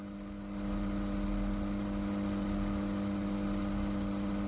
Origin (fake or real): real